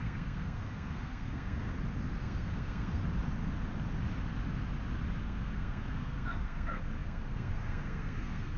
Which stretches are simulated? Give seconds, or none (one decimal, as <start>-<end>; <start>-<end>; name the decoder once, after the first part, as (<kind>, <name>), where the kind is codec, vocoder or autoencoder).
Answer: 0.0-1.7 (codec, SNAC); 2.2-3.0; 5.2-8.6